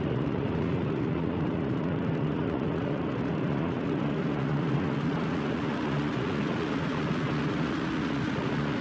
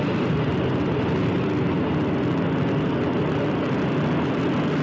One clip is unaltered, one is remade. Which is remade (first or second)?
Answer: first